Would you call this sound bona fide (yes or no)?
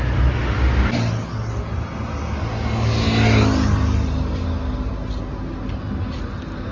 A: yes